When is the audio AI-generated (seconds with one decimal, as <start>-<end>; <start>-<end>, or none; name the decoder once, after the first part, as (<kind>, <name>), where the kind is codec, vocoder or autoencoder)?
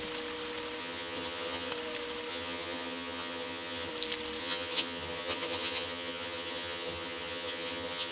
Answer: 0.8-1.7 (vocoder, HiFi-GAN); 2.3-3.9; 4.4-8.1